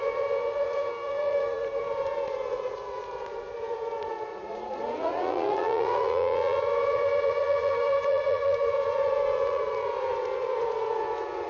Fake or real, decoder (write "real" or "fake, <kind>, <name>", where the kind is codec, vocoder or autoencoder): fake, vocoder, Vocos